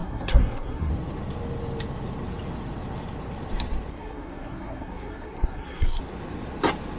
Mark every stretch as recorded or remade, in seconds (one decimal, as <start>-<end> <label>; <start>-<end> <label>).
0.0-0.9 remade; 0.9-3.9 recorded; 3.9-6.0 remade; 6.0-7.0 recorded